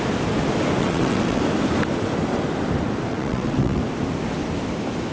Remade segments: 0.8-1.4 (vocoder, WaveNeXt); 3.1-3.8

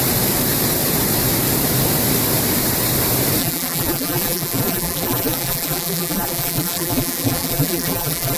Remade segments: 3.4-8.4 (vocoder, BigVGAN v2)